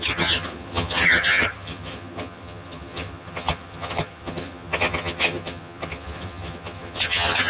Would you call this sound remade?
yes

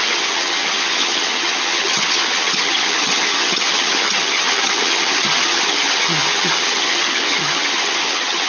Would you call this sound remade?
yes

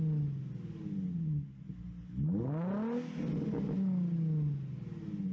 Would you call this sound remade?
no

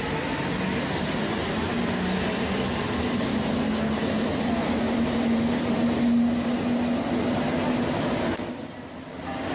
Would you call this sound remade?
no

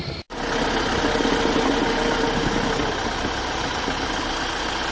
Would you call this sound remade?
no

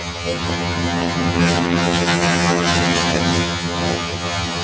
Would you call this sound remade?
yes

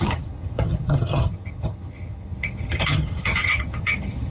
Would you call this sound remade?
yes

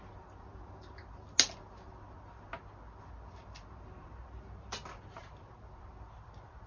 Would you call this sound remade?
no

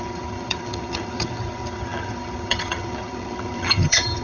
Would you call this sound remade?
yes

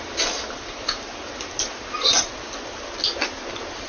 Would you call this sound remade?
no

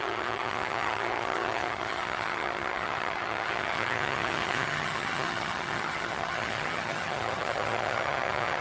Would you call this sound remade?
yes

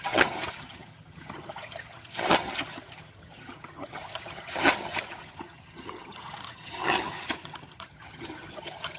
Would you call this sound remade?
yes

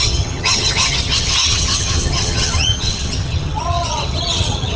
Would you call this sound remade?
yes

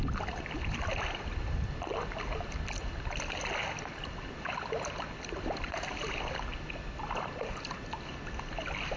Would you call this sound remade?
no